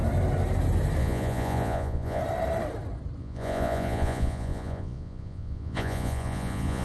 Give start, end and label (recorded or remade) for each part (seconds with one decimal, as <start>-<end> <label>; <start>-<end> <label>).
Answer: 0.0-1.0 recorded; 1.0-2.2 remade; 2.2-3.2 recorded; 3.2-6.8 remade